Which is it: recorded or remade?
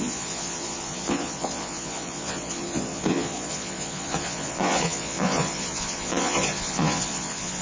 remade